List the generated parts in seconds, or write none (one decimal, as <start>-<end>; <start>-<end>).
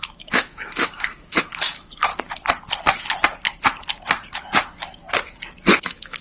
0.0-2.1; 5.8-6.2